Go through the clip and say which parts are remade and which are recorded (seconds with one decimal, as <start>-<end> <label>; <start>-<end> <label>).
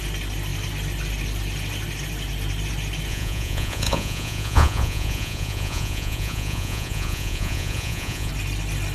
0.0-3.1 recorded; 3.1-8.3 remade; 8.3-8.9 recorded